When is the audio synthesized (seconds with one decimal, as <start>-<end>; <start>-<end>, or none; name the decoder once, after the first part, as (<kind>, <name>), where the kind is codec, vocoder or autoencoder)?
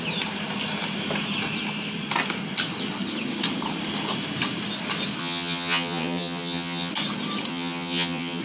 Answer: 5.2-6.9 (vocoder, HiFi-GAN); 7.5-8.4